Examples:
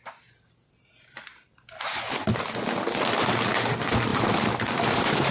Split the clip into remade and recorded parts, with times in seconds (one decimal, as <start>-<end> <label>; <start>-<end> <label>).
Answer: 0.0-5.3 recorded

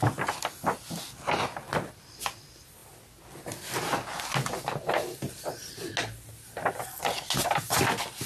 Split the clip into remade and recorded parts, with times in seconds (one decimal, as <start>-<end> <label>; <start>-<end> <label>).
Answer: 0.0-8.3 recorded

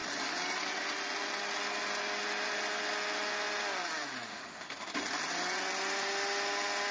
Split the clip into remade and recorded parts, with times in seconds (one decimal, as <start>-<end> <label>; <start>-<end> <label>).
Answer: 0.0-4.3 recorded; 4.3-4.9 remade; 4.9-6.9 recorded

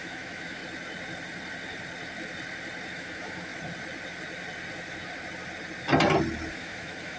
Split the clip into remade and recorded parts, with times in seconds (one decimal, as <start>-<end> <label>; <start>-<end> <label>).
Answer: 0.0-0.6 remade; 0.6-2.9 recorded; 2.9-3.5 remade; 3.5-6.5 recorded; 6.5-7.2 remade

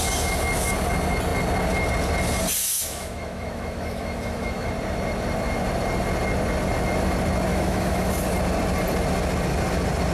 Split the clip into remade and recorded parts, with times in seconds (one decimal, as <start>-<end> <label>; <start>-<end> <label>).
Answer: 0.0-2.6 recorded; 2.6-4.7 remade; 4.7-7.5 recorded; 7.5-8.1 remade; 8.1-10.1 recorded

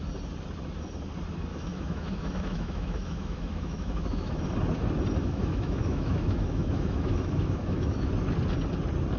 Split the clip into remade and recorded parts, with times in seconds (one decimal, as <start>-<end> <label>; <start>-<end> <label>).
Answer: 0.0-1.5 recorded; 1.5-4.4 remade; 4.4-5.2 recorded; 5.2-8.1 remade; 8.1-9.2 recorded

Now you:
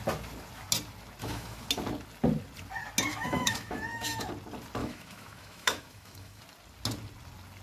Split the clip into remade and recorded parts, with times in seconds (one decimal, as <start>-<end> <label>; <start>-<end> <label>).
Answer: 0.0-1.2 recorded; 1.2-1.7 remade; 1.7-3.1 recorded; 3.1-4.3 remade; 4.3-4.8 recorded; 4.8-6.4 remade; 6.4-7.6 recorded